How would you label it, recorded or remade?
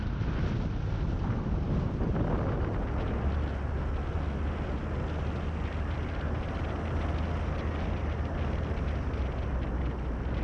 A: recorded